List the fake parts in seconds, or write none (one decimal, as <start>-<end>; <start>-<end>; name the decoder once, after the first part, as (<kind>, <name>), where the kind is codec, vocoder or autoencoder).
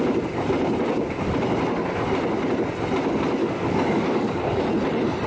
3.4-4.6 (codec, DAC)